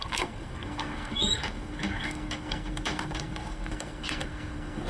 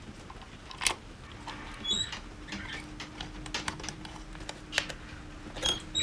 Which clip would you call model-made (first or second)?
first